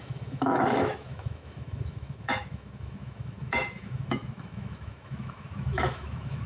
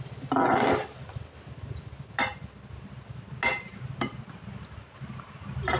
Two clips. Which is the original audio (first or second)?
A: second